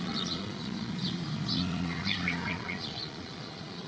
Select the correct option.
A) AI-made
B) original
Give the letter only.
A